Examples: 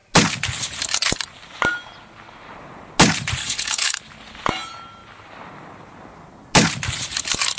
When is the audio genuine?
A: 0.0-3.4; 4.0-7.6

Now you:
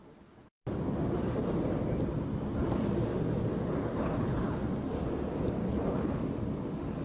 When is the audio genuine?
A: 0.0-3.8; 4.6-5.6; 6.2-7.0

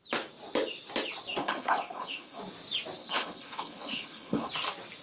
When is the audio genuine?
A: 0.0-1.4; 2.4-3.0; 4.5-5.0

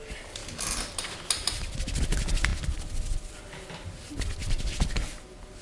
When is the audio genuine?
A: 0.0-5.6

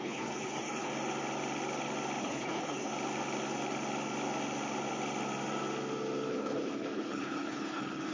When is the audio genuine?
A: 0.9-2.2; 2.9-6.3

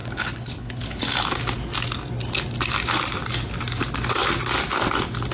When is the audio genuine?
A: 1.0-5.3

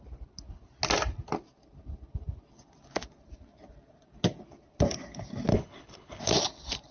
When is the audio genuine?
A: 0.0-5.5; 6.2-6.9

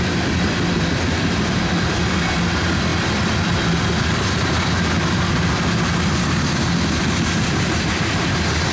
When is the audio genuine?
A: 0.0-8.7